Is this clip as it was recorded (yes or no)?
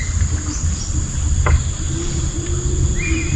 yes